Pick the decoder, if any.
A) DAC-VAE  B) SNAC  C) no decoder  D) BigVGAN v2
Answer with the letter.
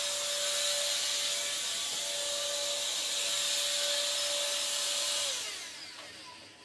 C